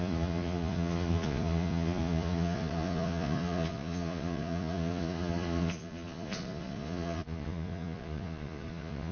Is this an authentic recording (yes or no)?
no